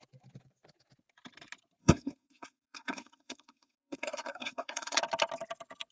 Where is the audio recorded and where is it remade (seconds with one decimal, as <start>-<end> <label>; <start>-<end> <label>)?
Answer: 0.0-1.8 recorded; 1.8-5.0 remade; 5.0-5.9 recorded